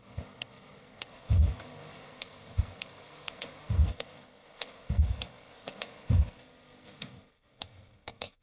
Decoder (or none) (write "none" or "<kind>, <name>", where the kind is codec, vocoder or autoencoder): codec, SNAC